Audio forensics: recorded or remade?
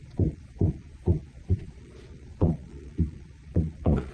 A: remade